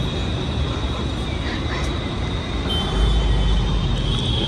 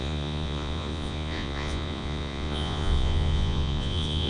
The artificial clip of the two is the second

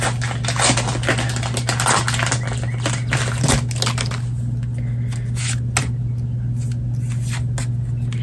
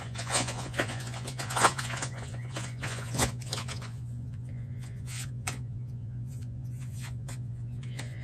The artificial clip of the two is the second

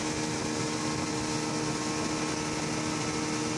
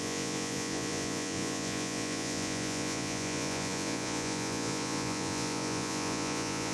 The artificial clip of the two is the second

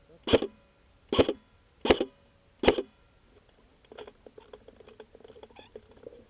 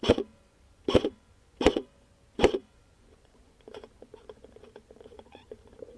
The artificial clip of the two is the second